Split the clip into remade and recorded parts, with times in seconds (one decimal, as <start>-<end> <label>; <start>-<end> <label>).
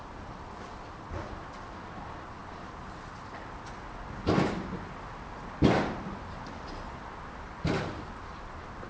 0.0-8.9 recorded